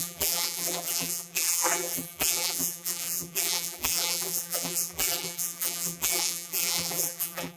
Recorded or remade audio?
remade